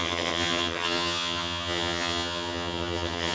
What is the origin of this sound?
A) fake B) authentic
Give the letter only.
A